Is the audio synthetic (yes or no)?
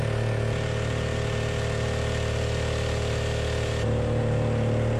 no